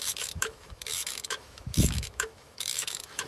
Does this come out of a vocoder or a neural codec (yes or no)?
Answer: yes